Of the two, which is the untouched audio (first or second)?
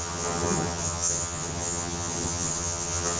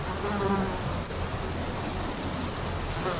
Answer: second